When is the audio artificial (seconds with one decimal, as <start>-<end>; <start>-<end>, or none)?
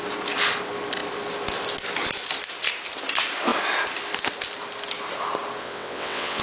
5.6-6.4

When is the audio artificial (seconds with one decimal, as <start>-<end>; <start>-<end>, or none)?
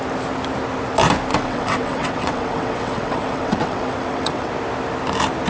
1.3-4.5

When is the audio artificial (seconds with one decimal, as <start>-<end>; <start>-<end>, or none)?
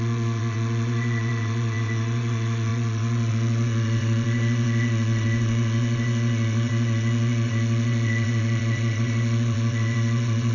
0.0-10.5